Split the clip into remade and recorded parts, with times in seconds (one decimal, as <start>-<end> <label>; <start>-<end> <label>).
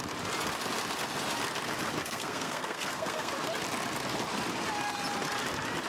0.0-2.0 recorded; 2.0-3.3 remade; 3.3-5.9 recorded